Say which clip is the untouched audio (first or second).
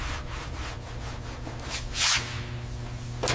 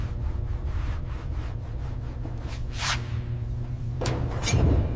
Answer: first